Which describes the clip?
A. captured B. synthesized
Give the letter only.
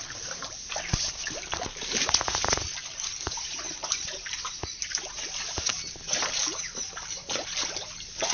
B